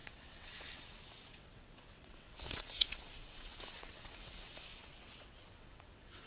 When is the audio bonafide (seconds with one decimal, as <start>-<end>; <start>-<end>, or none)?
none